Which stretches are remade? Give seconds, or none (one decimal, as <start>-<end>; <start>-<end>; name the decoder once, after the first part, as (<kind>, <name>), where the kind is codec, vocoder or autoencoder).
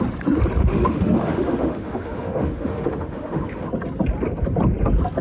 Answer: 0.6-3.7 (autoencoder, DAC-VAE)